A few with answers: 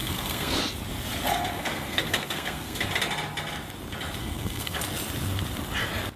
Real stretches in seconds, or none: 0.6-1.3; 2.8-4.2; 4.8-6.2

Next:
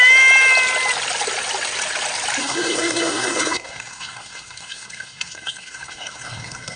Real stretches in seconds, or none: 0.0-2.4

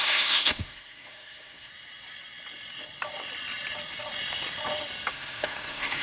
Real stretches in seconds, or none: 1.7-5.1

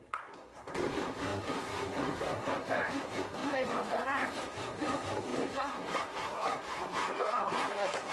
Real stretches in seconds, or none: none

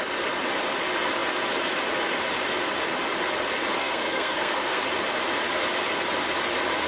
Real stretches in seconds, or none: 0.0-3.8; 4.8-6.9

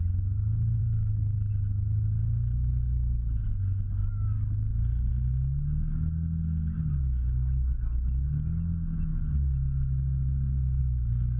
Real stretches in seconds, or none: 0.0-0.8; 1.5-11.4

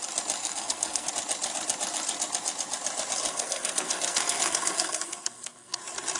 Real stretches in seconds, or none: 0.0-0.4; 1.1-3.3; 5.8-6.2